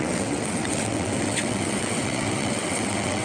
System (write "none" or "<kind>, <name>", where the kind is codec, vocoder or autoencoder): vocoder, WaveNeXt